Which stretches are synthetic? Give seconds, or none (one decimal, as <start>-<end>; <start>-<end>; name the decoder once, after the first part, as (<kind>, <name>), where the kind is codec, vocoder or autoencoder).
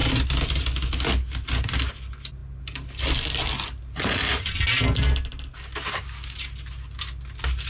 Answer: none